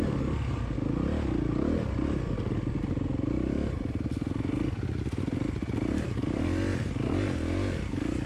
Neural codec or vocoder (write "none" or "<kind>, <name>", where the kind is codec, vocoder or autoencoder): none